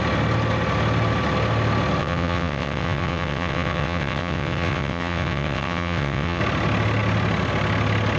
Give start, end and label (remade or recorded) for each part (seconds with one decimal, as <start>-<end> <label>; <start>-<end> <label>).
0.0-2.0 recorded; 2.0-6.4 remade; 6.4-8.2 recorded